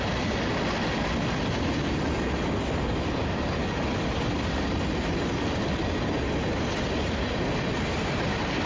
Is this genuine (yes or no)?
yes